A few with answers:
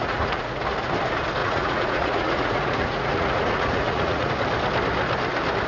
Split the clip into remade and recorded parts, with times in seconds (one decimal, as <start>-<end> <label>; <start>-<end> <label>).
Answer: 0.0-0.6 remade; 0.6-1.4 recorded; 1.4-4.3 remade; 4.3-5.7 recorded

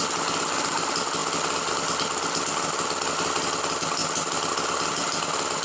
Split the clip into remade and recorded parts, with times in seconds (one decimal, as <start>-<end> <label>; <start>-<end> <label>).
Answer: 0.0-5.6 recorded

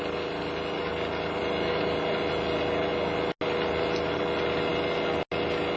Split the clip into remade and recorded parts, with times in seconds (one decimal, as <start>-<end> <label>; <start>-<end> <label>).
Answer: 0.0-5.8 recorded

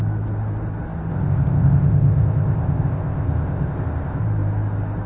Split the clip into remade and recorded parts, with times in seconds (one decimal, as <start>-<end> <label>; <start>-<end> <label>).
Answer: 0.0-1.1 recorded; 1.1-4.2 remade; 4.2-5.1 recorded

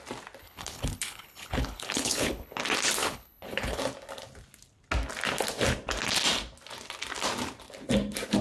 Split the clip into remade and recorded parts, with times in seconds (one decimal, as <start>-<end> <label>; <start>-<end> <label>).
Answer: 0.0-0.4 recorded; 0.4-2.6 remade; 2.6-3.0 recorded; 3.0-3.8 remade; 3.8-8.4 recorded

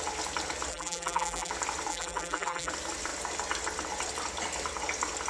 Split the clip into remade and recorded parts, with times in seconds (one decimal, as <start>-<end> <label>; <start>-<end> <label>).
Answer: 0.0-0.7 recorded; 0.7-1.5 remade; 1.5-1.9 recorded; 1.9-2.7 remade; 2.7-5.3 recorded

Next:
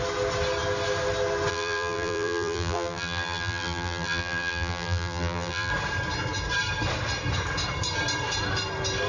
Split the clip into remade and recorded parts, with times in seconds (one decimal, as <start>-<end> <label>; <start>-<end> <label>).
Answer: 0.0-1.5 recorded; 1.5-5.7 remade; 5.7-9.1 recorded